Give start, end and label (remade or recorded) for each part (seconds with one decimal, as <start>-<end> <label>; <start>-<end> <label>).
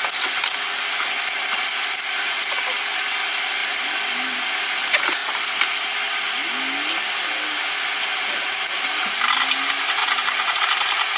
0.0-11.2 recorded